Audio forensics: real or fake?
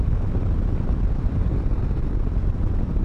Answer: real